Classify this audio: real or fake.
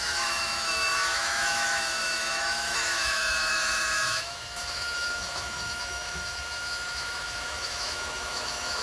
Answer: fake